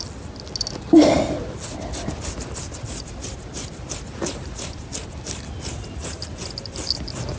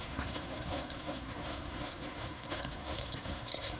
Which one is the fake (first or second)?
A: second